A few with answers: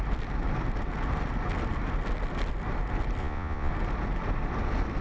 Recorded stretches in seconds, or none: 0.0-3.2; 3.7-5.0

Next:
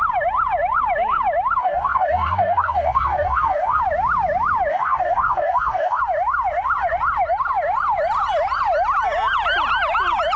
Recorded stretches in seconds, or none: 0.0-1.6; 3.8-4.7; 6.0-10.4

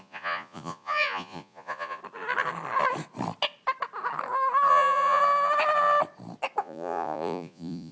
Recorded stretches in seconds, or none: 2.0-4.7; 5.2-6.6

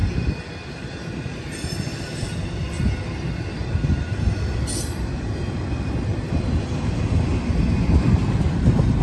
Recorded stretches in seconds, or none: 7.3-8.2

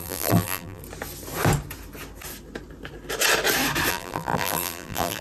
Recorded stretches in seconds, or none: 0.8-3.9

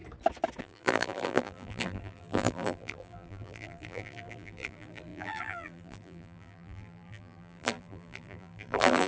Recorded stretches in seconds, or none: 0.0-0.6

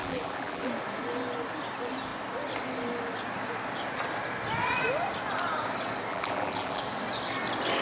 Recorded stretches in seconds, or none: 0.7-6.1; 6.8-7.8

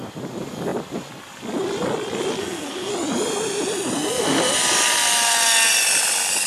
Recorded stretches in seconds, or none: 0.0-2.4; 2.9-6.5